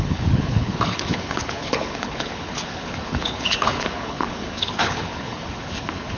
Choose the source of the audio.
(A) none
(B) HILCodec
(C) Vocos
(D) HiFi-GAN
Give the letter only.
B